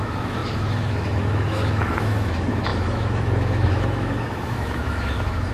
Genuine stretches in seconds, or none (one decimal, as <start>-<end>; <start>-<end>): none

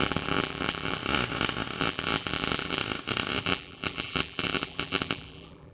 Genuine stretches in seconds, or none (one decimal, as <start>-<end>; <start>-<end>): 1.0-1.8; 2.8-3.4

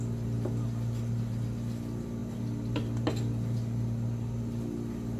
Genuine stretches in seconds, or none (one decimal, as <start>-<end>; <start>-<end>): 0.0-5.2

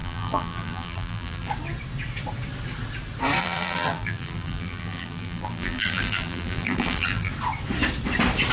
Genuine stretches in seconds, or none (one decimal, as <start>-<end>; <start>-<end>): 1.5-3.4; 7.3-8.5

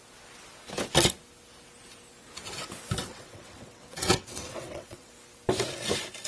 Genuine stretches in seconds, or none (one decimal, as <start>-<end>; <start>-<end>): 0.0-3.0; 5.1-6.3

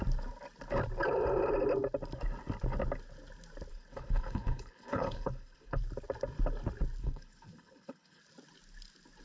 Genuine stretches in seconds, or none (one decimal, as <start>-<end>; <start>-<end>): 0.0-3.7; 5.8-7.0; 8.2-9.2

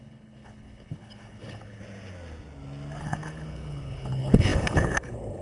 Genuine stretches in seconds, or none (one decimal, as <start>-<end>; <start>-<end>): 1.8-3.0